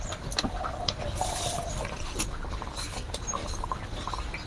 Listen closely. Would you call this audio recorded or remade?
recorded